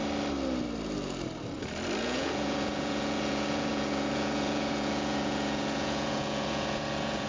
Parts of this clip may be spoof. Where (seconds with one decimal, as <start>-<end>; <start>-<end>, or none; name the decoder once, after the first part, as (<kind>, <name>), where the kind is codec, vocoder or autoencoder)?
2.0-7.3 (vocoder, Vocos)

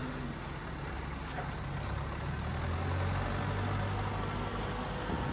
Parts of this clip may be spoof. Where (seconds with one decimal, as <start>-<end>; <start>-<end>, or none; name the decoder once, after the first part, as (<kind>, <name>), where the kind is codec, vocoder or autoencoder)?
none